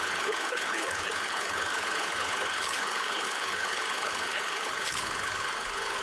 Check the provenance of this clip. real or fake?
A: fake